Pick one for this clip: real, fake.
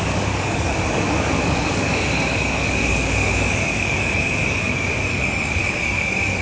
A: fake